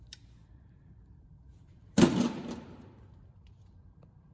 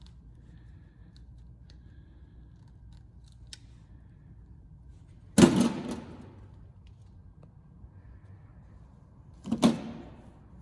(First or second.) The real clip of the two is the second